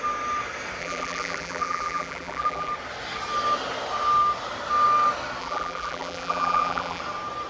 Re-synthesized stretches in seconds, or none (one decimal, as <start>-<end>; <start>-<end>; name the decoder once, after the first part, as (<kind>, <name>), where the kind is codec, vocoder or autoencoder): 0.8-2.7 (vocoder, BigVGAN v2); 5.4-7.0